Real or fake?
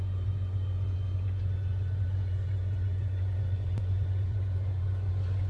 fake